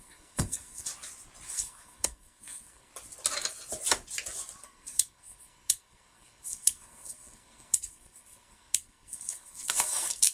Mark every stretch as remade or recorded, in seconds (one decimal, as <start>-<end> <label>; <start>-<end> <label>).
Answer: 0.0-0.9 remade; 0.9-1.5 recorded; 1.5-2.9 remade; 2.9-4.6 recorded; 4.6-10.3 remade